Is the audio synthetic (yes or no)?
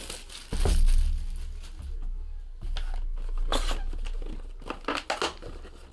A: no